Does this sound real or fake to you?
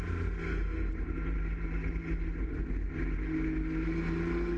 real